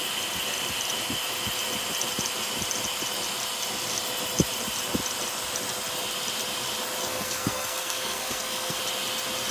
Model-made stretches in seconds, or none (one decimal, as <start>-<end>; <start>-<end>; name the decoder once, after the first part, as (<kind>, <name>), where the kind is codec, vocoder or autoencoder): 7.0-8.8 (codec, SNAC)